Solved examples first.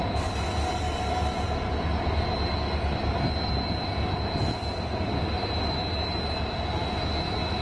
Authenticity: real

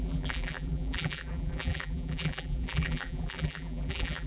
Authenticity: fake